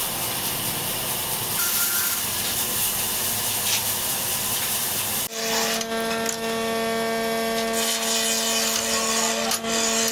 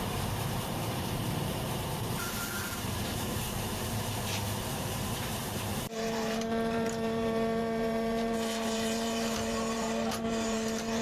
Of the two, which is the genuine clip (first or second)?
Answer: first